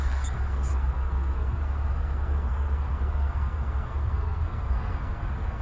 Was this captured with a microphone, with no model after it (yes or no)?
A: no